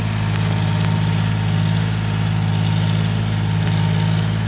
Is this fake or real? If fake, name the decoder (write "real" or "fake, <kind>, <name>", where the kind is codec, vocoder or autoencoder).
real